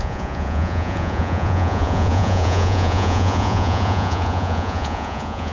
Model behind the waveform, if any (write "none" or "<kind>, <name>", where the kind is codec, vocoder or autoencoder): vocoder, Vocos